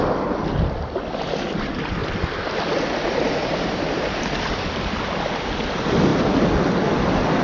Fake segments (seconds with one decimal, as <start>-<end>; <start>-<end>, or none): none